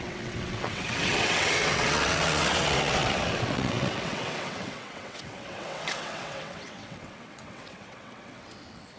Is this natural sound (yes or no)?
no